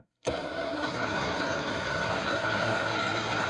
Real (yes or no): no